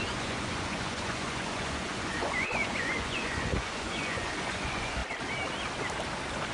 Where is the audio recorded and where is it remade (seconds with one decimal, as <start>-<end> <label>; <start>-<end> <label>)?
0.0-5.0 remade; 5.0-6.5 recorded